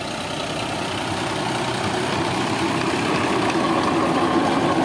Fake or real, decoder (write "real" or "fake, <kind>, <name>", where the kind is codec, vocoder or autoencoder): real